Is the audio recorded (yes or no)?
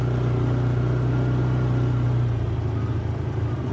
yes